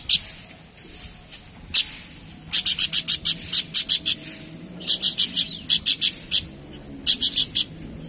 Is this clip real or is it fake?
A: real